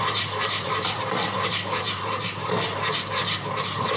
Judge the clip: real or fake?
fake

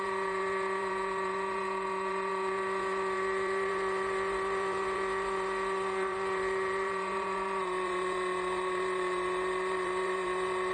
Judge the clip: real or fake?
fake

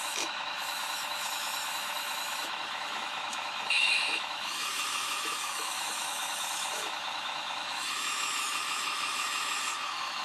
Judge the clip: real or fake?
fake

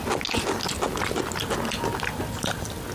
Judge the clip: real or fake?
real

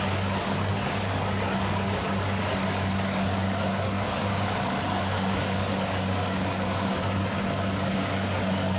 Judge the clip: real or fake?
fake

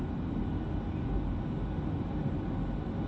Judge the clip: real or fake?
real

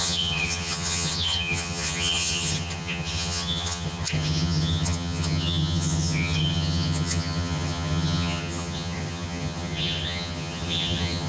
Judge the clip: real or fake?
fake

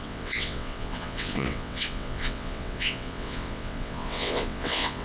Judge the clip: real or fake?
fake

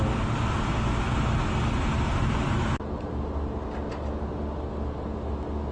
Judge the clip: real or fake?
real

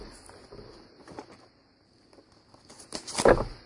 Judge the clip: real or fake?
real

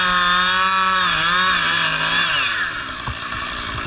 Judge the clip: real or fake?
real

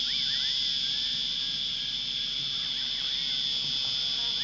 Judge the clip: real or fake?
real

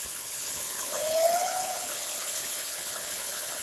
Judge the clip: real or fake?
fake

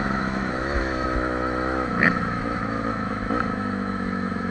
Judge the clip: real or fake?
fake